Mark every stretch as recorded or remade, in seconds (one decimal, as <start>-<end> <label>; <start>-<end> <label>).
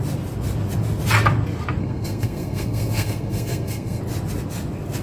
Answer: 0.0-1.8 recorded; 1.8-4.0 remade; 4.0-5.0 recorded